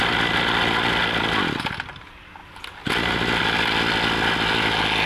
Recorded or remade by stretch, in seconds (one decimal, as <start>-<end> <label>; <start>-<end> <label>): 0.0-5.1 recorded